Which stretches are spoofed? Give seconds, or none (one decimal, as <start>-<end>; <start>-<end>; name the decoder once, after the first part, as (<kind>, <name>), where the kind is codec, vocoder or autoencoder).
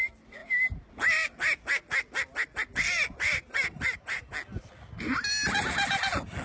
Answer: 0.4-0.9 (vocoder, BigVGAN v2); 3.3-4.2